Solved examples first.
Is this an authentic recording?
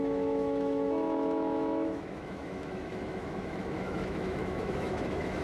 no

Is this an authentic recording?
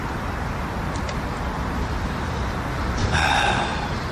yes